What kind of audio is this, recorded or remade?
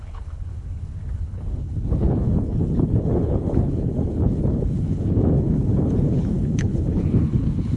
remade